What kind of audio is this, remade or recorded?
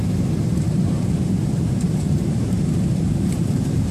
remade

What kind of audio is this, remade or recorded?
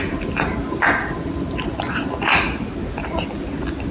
recorded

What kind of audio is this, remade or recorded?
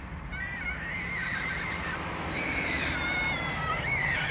remade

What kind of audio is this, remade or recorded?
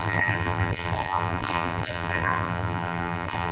remade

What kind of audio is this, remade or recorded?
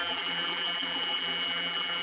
remade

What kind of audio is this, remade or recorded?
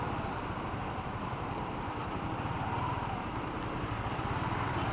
recorded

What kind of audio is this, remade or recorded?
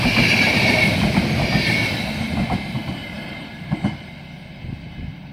recorded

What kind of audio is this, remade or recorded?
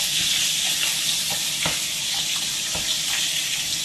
recorded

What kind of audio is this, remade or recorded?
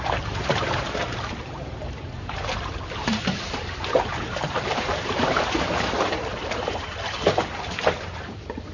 remade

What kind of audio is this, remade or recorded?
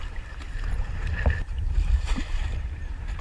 remade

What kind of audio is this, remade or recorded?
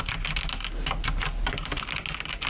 recorded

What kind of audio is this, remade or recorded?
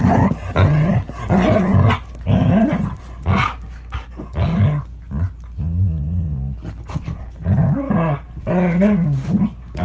recorded